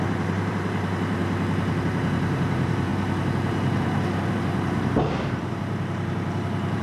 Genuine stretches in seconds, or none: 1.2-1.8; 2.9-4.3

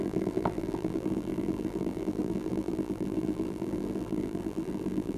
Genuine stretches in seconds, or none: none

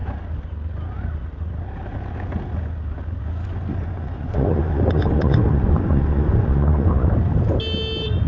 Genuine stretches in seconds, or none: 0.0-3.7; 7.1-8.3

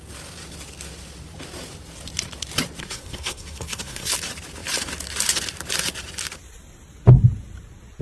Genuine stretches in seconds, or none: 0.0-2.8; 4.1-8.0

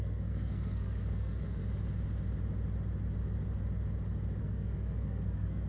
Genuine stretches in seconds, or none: 1.6-4.4

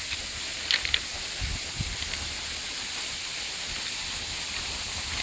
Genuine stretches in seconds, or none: 0.0-5.2

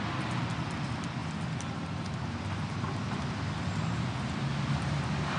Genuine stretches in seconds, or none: 0.0-5.4